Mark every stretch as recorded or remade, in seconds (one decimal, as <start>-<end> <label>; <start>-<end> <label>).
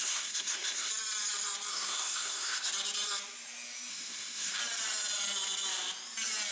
0.0-0.9 remade; 0.9-1.7 recorded; 1.7-2.7 remade; 2.7-3.9 recorded; 3.9-4.6 remade; 4.6-6.5 recorded